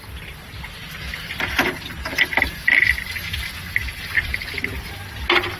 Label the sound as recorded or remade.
recorded